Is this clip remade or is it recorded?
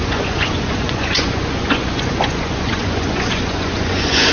remade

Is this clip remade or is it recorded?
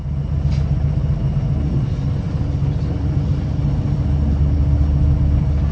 recorded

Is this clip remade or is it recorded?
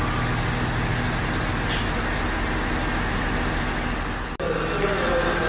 recorded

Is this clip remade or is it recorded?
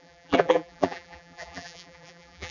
remade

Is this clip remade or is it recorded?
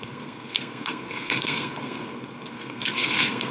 remade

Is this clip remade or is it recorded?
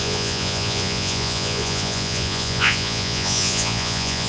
remade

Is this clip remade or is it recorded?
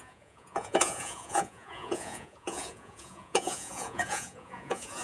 remade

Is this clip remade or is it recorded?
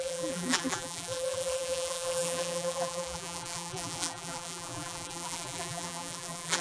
remade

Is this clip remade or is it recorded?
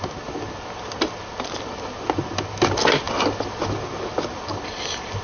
recorded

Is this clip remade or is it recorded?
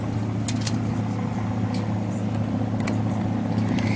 recorded